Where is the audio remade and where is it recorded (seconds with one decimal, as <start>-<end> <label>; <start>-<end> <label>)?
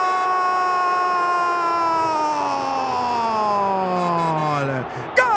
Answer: 0.0-5.4 recorded